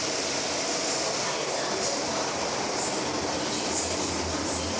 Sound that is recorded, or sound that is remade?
recorded